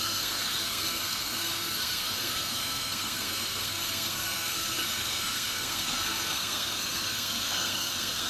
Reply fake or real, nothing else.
fake